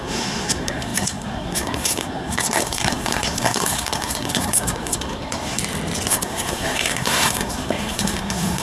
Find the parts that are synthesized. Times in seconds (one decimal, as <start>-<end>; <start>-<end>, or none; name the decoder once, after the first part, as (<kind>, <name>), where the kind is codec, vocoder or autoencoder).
0.0-5.6 (codec, SNAC); 6.1-8.6